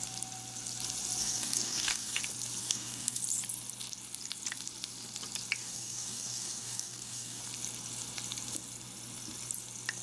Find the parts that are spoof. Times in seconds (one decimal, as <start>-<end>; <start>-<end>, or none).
1.2-2.2; 2.6-3.2; 5.6-7.4